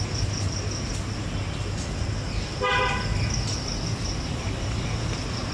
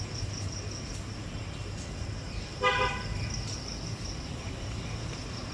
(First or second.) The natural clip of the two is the first